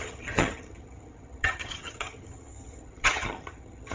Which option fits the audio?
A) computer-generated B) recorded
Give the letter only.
A